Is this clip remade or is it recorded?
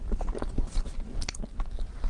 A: recorded